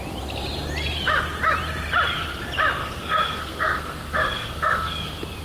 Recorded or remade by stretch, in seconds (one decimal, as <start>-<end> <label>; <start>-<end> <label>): 0.0-2.8 recorded; 2.8-5.0 remade; 5.0-5.4 recorded